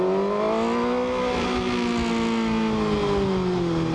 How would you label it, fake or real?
real